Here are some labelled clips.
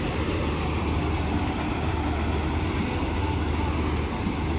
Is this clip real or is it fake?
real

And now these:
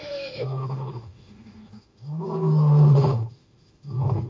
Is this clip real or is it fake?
fake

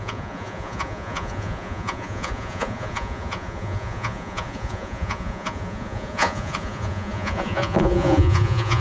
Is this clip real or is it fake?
fake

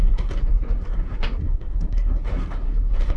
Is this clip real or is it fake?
fake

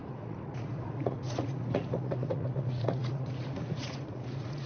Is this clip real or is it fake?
fake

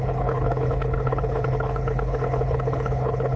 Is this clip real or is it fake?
fake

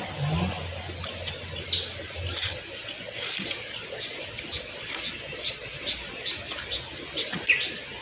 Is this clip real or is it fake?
real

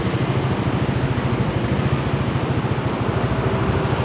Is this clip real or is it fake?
real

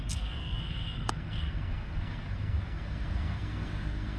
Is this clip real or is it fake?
fake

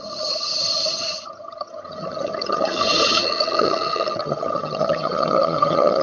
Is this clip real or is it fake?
fake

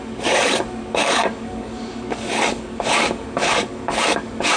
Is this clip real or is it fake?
fake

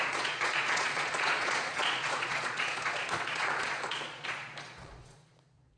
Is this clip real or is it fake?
fake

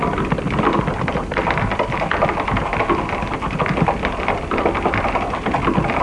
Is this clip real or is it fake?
real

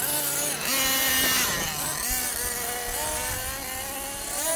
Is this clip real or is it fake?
real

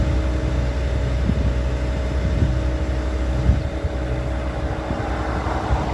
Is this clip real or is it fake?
real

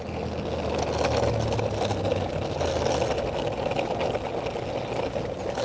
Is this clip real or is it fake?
real